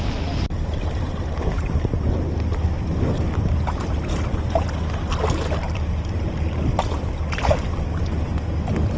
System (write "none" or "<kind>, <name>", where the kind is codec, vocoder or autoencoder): none